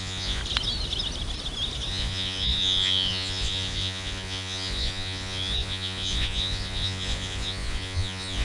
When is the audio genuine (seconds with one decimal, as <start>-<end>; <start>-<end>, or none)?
0.4-1.9